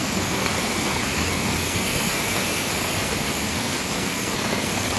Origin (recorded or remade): remade